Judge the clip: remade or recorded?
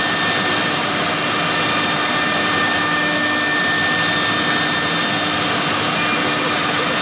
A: recorded